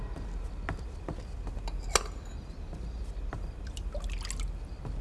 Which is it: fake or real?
real